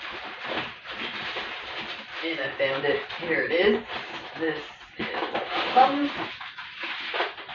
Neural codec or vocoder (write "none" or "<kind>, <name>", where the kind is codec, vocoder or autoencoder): vocoder, BigVGAN v2